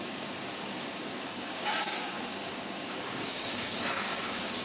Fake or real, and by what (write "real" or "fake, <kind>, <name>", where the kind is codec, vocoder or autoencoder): fake, codec, DAC